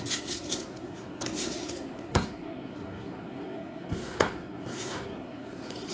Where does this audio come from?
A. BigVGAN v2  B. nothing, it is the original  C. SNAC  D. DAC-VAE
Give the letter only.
C